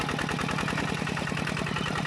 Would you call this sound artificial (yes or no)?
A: no